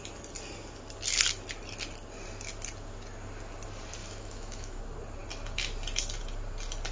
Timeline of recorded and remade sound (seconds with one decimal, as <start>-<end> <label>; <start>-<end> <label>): 0.0-4.0 recorded; 4.0-4.8 remade; 4.8-6.9 recorded